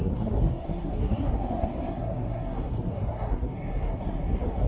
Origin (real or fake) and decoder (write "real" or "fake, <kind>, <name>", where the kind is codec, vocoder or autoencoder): fake, codec, SNAC